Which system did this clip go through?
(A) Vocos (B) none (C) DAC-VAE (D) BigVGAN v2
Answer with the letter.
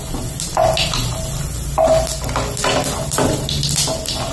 B